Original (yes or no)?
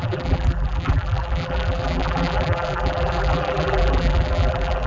no